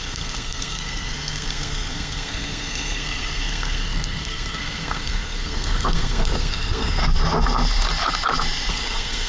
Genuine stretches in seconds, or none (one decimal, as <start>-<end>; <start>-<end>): 7.0-8.7

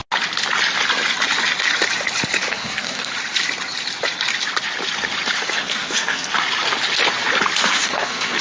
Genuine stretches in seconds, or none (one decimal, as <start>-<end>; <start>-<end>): 0.0-2.5; 3.1-5.5; 6.3-7.6